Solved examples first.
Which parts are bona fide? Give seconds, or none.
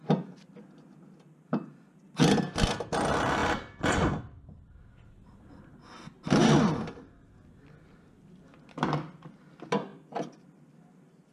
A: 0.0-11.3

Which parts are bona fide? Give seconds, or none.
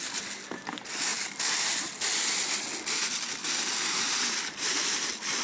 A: 0.0-5.4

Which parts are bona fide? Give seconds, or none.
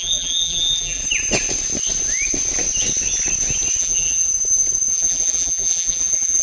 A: 1.0-3.8; 4.3-4.9